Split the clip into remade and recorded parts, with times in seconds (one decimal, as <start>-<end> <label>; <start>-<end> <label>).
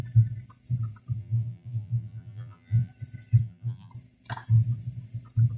0.0-1.2 recorded; 1.2-2.9 remade; 2.9-3.4 recorded; 3.4-3.9 remade; 3.9-5.6 recorded